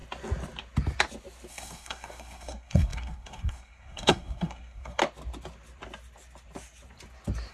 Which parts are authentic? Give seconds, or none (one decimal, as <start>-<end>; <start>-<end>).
0.0-1.5; 5.0-7.5